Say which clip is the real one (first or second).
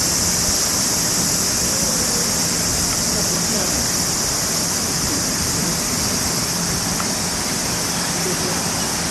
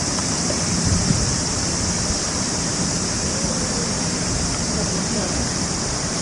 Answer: first